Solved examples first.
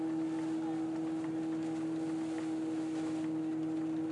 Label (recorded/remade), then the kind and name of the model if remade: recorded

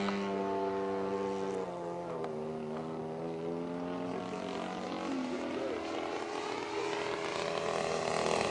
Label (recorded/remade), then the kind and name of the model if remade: recorded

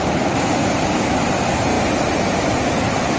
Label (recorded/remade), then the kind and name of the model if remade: recorded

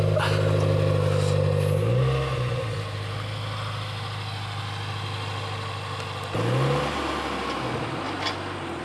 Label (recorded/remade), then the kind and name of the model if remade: recorded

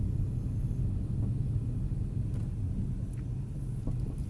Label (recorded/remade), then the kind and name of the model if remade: recorded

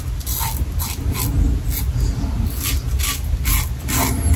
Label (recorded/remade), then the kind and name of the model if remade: recorded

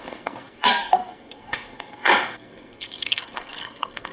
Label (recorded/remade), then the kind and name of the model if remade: remade, codec, SNAC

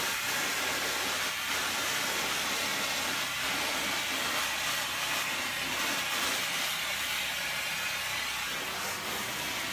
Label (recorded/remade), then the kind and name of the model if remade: recorded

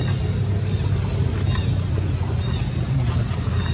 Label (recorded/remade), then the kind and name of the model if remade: recorded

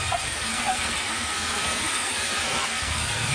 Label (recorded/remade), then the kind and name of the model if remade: remade, codec, SNAC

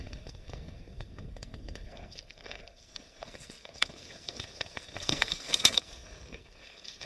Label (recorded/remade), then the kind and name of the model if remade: remade, codec, SNAC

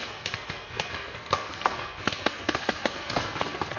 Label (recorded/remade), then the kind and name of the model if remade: remade, codec, SNAC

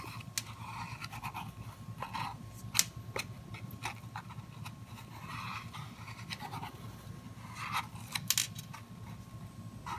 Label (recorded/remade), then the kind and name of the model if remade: recorded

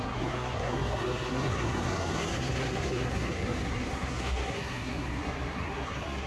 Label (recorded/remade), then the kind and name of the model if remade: remade, codec, SNAC